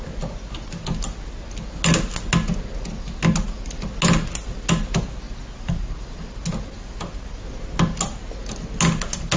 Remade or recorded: recorded